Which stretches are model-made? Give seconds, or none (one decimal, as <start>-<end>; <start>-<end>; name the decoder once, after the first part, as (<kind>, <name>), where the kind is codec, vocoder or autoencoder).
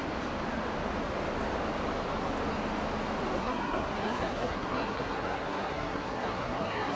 3.4-7.0 (codec, SNAC)